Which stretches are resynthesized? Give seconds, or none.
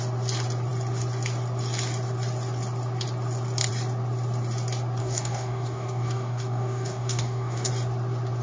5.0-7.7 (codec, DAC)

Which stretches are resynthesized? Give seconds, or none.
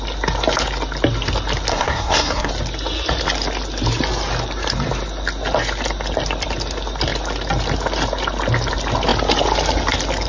1.7-2.5 (codec, SNAC)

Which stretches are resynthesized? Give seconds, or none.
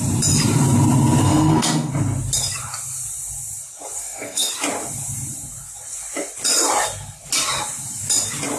1.2-1.9 (codec, SNAC); 4.0-4.5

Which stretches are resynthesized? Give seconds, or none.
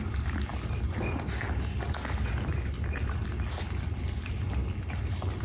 none